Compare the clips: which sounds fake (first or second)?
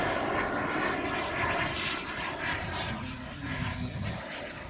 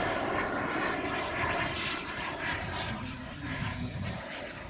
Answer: second